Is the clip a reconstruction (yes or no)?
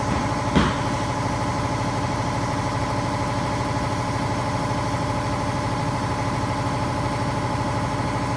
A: no